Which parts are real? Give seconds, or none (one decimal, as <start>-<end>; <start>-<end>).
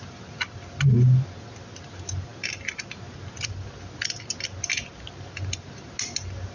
0.0-6.5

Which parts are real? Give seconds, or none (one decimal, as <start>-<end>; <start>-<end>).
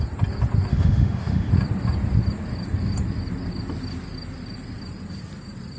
0.0-0.7; 1.5-5.8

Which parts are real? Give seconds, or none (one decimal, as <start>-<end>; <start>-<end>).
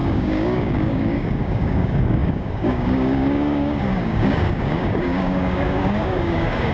none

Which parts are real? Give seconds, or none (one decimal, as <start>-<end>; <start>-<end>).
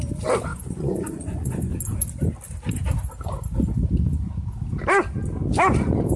0.0-0.5; 1.7-6.2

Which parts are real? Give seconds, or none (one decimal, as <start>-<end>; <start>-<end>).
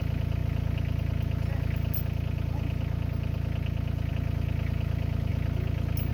0.0-6.1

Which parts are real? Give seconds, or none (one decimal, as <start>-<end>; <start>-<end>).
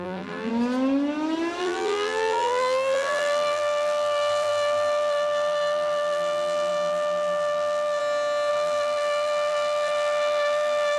0.5-1.6; 8.0-8.5